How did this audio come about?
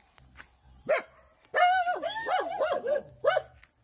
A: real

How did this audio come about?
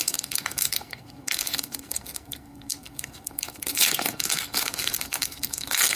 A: fake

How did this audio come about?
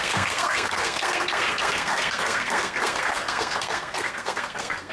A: fake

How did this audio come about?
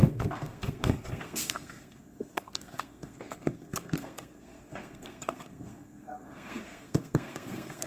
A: fake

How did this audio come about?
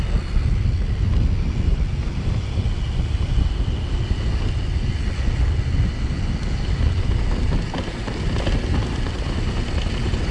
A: real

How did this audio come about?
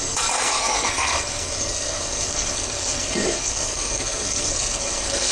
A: fake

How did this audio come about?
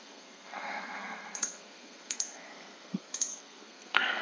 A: fake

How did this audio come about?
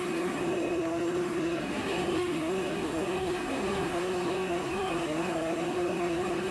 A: fake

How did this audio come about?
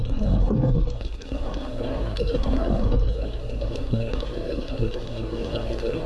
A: fake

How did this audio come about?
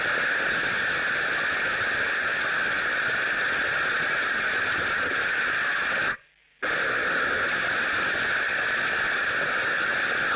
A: real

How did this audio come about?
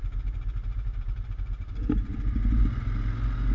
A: real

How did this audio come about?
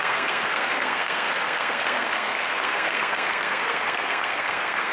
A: fake